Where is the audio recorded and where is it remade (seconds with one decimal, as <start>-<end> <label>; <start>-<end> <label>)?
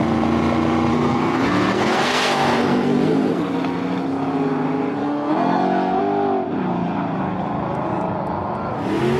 0.0-0.9 recorded; 0.9-3.4 remade; 3.4-5.0 recorded; 5.0-6.0 remade; 6.0-9.2 recorded